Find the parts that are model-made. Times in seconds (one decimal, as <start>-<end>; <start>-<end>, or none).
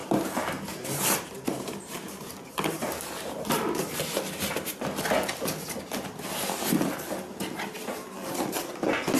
0.0-4.0